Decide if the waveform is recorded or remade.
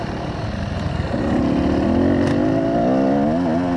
recorded